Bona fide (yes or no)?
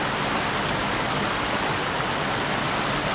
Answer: yes